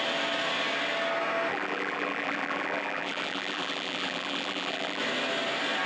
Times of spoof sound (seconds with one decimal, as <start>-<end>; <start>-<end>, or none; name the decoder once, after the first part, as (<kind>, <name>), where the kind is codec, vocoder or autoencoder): 1.5-5.0 (vocoder, BigVGAN v2)